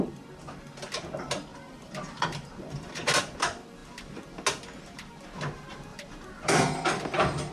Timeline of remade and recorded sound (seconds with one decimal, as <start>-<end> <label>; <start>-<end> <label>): 0.0-1.5 recorded; 1.5-3.2 remade; 3.2-5.9 recorded; 5.9-7.5 remade